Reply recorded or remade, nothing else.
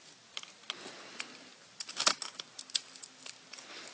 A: recorded